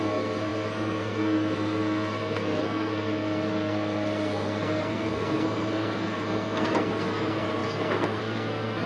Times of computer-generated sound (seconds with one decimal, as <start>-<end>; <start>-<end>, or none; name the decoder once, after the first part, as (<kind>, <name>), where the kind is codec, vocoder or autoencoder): 0.0-8.9 (codec, SNAC)